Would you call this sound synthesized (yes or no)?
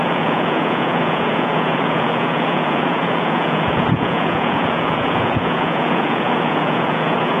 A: yes